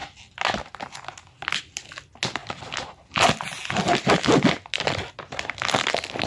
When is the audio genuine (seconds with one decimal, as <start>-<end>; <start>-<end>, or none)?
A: 0.0-6.3